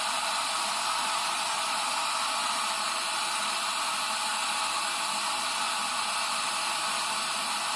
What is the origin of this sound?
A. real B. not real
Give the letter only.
A